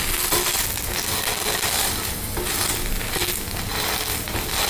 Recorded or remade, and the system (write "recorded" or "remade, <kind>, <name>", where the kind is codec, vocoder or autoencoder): recorded